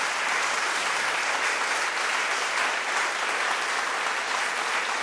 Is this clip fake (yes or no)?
no